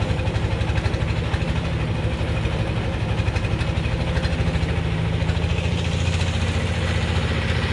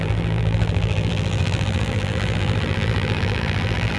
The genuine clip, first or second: first